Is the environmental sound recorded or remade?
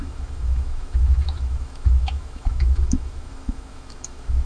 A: remade